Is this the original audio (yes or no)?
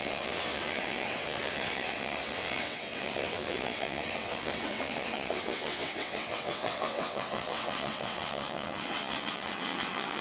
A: no